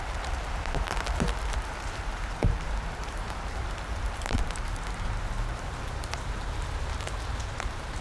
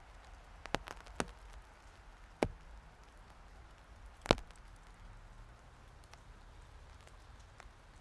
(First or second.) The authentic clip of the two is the second